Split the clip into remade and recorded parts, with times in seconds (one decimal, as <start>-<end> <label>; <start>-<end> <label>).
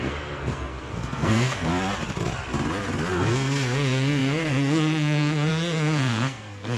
0.0-1.7 remade; 1.7-3.1 recorded; 3.1-6.8 remade